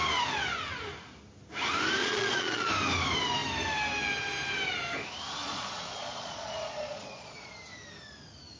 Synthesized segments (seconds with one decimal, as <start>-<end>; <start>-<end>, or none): 2.0-2.7; 5.4-7.5